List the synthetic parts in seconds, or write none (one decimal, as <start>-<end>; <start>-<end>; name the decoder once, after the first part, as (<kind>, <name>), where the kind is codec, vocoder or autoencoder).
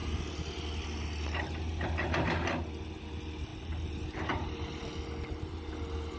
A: none